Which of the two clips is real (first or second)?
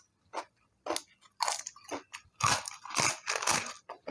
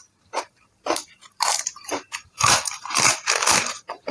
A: first